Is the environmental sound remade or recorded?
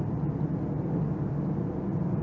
recorded